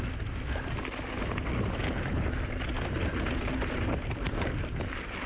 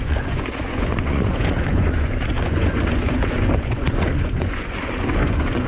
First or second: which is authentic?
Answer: first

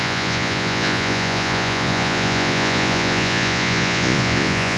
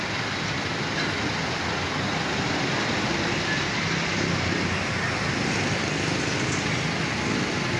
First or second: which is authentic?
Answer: second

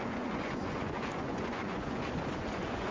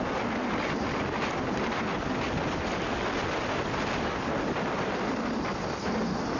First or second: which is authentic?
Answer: second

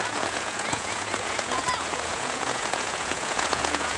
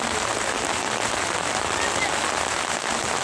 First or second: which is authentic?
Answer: second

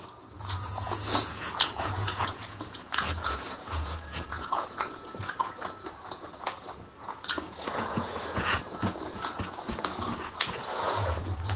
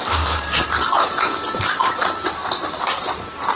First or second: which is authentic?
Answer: second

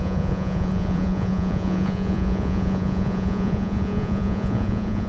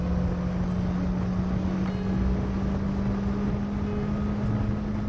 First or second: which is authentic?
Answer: second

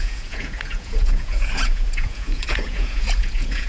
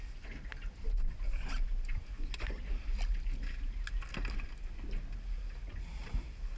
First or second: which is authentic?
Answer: second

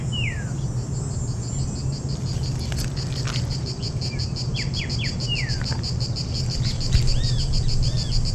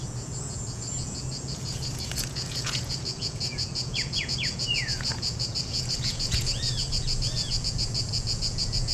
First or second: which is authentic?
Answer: first